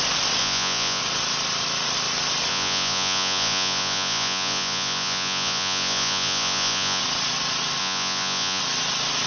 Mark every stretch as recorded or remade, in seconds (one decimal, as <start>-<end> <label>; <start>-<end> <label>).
0.0-0.4 recorded; 0.4-1.0 remade; 1.0-2.5 recorded; 2.5-7.0 remade; 7.0-7.8 recorded; 7.8-8.6 remade; 8.6-9.3 recorded